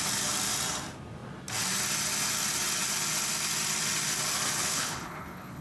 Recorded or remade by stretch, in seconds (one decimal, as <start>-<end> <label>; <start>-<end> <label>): 0.0-4.7 recorded; 4.7-5.6 remade